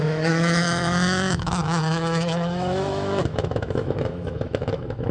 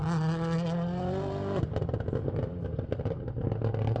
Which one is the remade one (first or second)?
first